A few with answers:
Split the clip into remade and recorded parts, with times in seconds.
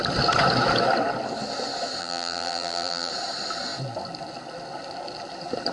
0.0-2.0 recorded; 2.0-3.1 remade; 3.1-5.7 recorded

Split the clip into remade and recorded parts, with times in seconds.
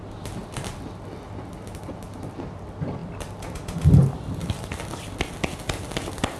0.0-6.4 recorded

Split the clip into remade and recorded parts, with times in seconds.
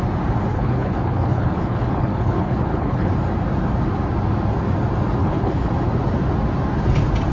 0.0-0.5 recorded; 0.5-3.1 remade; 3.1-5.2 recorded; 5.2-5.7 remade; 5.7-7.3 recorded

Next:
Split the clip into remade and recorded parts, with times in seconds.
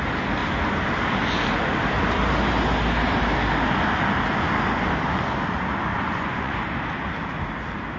0.0-5.9 recorded; 5.9-6.6 remade; 6.6-8.0 recorded